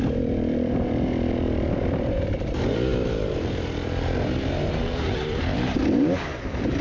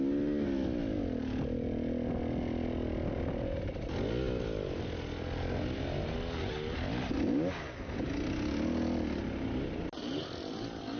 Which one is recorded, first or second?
second